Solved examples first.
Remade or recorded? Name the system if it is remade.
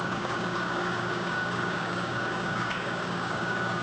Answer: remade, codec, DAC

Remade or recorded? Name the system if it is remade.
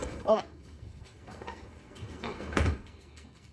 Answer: remade, codec, SNAC